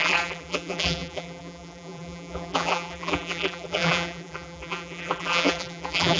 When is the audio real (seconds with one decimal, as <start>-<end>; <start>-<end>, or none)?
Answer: none

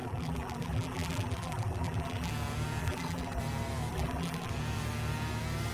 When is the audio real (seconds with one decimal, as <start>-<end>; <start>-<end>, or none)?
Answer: 2.3-2.8; 3.4-3.9; 4.5-5.7